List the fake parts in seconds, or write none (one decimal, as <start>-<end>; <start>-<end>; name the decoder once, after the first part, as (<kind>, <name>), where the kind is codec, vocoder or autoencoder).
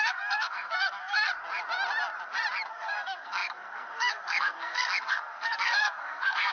0.0-1.3 (codec, SNAC); 2.7-6.5